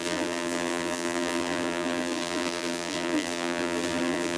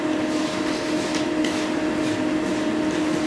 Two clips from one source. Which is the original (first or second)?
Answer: second